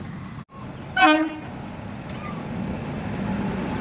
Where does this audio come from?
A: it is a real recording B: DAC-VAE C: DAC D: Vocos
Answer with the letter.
A